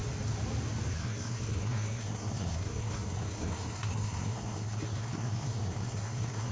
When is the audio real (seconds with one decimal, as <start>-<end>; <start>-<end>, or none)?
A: 0.0-0.9